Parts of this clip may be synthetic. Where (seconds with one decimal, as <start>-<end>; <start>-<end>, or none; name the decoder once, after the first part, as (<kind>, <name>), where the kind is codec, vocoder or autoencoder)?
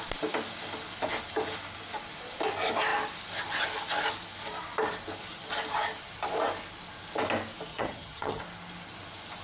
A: 7.7-8.4 (vocoder, HiFi-GAN)